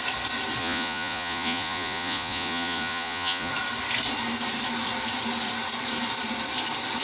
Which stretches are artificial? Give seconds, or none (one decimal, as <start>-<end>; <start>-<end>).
0.6-3.5